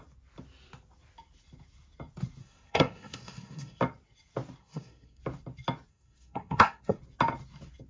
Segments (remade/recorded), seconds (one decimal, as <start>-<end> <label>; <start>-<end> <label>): 0.0-2.4 recorded; 2.4-3.8 remade; 3.8-4.6 recorded; 4.6-5.2 remade; 5.2-5.9 recorded; 5.9-7.0 remade; 7.0-7.9 recorded